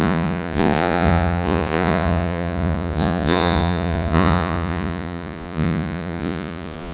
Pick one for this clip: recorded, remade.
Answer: remade